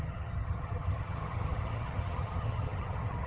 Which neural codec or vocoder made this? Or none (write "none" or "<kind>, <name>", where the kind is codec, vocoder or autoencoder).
vocoder, HiFi-GAN